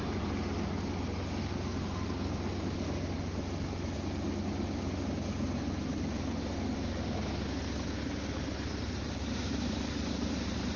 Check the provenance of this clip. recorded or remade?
recorded